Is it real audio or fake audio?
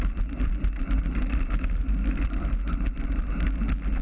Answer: real